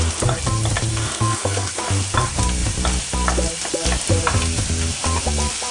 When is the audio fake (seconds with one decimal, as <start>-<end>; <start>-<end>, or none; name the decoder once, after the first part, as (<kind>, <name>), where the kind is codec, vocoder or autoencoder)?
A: 0.9-1.7 (codec, SNAC)